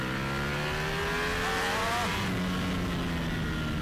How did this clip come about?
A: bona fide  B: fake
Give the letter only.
A